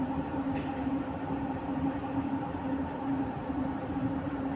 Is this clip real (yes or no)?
no